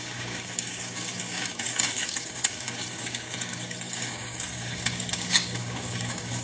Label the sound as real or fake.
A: fake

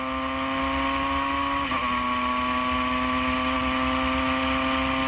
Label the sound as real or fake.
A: real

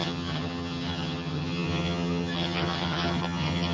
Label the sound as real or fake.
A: fake